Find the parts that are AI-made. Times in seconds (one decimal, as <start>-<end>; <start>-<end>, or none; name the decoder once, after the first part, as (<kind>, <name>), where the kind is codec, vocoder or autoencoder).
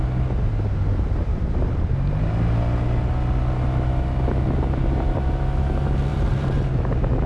6.1-7.3 (vocoder, BigVGAN v2)